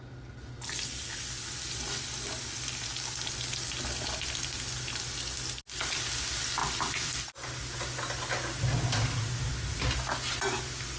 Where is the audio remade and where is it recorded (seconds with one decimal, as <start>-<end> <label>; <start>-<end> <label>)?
0.0-11.0 recorded